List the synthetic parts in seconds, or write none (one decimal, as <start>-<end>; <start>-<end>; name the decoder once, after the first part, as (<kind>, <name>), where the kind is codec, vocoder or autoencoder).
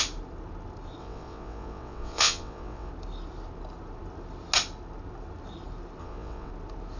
1.0-2.9 (vocoder, WaveNeXt); 6.0-6.5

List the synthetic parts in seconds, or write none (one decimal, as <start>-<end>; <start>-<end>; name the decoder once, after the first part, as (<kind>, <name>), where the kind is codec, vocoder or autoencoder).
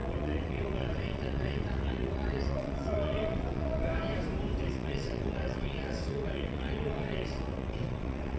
0.0-3.9 (vocoder, WaveNeXt); 4.6-8.4